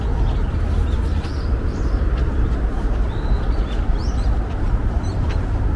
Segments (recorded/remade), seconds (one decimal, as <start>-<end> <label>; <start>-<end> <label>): 0.0-1.7 recorded; 1.7-2.8 remade; 2.8-5.8 recorded